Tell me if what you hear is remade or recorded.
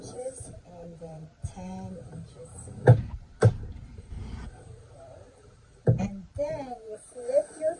remade